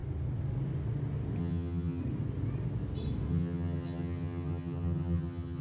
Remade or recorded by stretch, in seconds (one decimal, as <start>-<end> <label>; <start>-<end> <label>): 0.0-1.4 recorded; 1.4-2.0 remade; 2.0-3.3 recorded; 3.3-5.6 remade